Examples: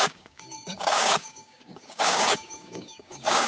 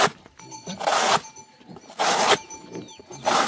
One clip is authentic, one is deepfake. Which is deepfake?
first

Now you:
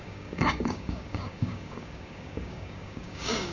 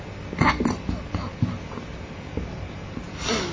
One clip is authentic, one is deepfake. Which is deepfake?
first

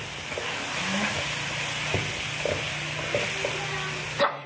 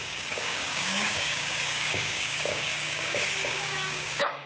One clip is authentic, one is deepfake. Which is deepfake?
second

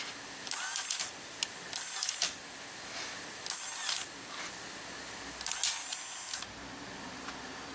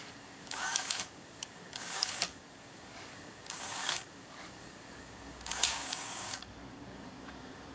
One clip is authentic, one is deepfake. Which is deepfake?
second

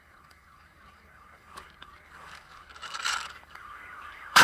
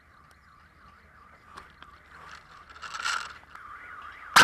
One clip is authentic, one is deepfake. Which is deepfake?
first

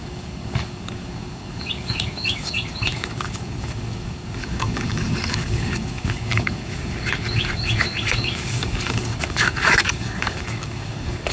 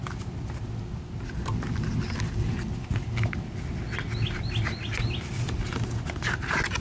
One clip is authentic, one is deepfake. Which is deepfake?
first